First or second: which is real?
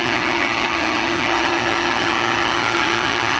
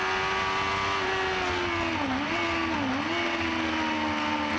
second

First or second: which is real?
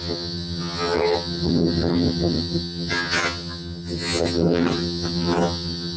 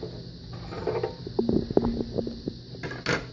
second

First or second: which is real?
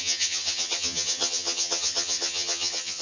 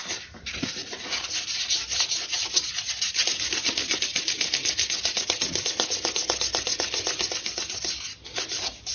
second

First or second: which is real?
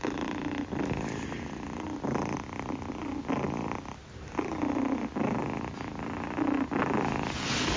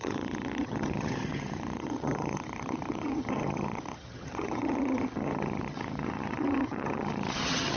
first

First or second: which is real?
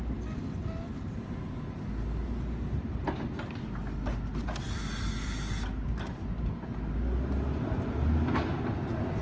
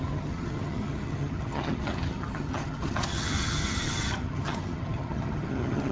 first